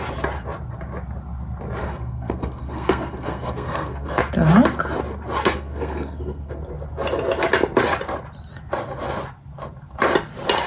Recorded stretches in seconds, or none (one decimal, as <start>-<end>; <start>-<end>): 0.0-1.8; 4.2-5.5; 6.6-10.7